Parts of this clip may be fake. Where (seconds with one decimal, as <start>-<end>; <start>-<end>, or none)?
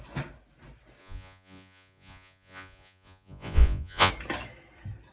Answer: 1.0-4.1